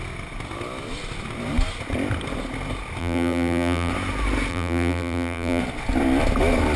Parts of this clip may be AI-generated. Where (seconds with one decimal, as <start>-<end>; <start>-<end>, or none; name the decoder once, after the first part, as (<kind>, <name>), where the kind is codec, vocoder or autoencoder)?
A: 3.0-3.9 (vocoder, BigVGAN v2); 4.5-5.6